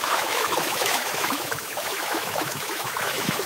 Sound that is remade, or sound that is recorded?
remade